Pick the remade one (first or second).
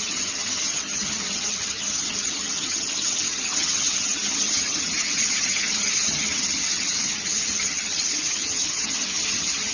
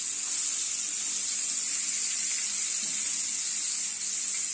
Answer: first